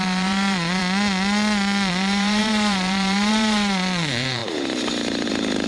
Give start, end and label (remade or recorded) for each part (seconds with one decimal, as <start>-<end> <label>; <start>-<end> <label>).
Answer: 0.0-0.8 remade; 0.8-1.9 recorded; 1.9-5.7 remade